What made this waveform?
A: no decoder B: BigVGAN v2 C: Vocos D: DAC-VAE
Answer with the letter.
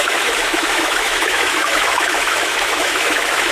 D